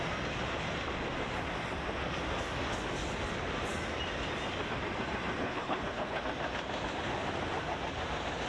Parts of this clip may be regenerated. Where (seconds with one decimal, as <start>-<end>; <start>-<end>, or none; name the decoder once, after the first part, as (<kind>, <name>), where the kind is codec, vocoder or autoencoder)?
5.4-6.2 (codec, HILCodec)